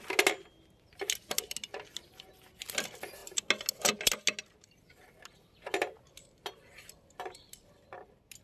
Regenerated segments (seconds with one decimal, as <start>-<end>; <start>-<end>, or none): none